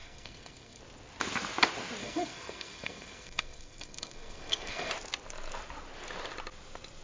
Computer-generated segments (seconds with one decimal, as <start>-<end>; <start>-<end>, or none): 0.0-0.8; 2.0-4.9

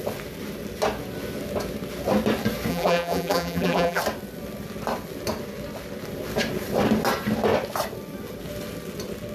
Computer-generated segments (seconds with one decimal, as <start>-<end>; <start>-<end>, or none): 2.7-4.0

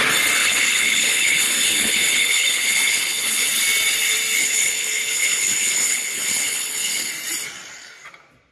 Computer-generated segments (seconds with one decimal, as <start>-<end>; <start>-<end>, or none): 0.4-3.5; 4.4-7.1

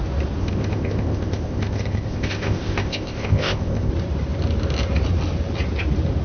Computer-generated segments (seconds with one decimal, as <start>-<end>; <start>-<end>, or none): 0.4-3.9

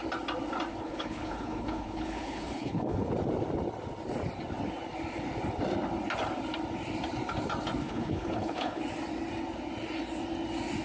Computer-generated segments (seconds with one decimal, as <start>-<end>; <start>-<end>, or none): 0.7-3.1; 7.8-8.8

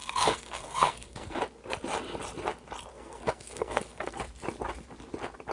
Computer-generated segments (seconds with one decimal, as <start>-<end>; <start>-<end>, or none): 0.0-1.4; 2.9-4.2

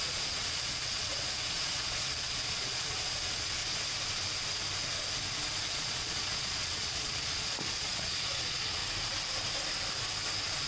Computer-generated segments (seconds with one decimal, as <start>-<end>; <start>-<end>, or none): 0.0-3.6; 5.7-8.8

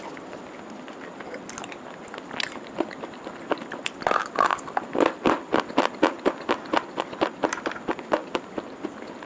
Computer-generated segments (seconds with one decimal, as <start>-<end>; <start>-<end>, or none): none